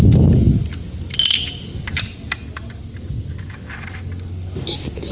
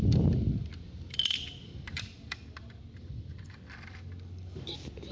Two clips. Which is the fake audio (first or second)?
second